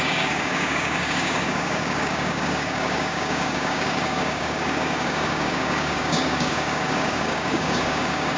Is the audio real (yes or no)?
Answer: no